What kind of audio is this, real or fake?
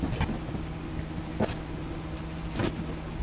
real